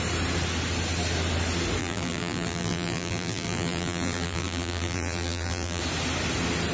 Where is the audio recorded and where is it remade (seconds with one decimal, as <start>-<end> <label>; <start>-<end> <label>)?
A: 0.0-1.8 recorded; 1.8-5.8 remade; 5.8-6.7 recorded